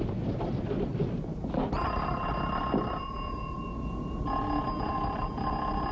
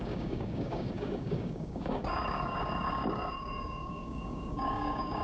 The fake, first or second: second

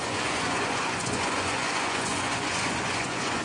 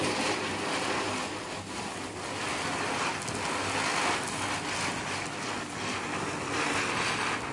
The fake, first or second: first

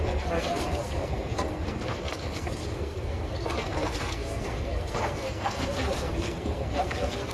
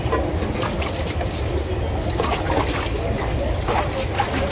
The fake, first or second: first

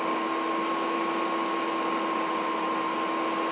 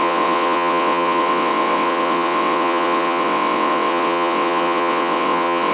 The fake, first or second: second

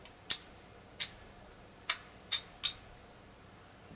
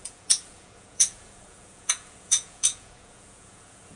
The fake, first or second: second